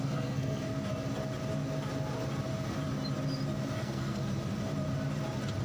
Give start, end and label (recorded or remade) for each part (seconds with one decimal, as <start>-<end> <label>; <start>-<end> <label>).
0.0-0.7 remade; 0.7-3.7 recorded; 3.7-4.2 remade; 4.2-5.6 recorded

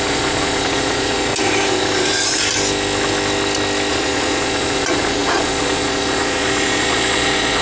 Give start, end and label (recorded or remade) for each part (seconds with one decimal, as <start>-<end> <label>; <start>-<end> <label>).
0.0-1.3 remade; 1.3-3.9 recorded; 3.9-7.6 remade

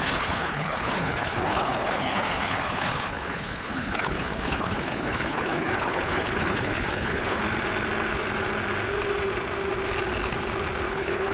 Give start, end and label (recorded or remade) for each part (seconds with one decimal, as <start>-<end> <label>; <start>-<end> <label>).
0.0-7.4 remade; 7.4-10.9 recorded; 10.9-11.3 remade

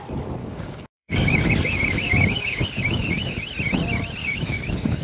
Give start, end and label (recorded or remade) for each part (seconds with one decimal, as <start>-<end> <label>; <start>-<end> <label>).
0.0-0.4 recorded; 0.4-3.4 remade; 3.4-4.2 recorded; 4.2-5.0 remade